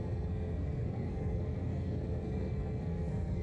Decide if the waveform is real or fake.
fake